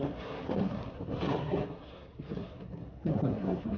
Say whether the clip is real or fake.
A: fake